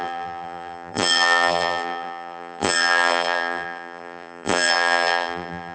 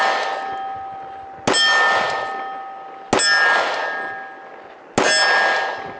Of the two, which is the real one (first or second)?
second